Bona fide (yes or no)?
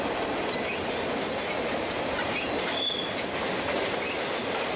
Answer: yes